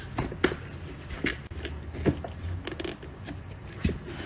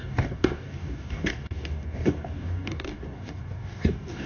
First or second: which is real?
first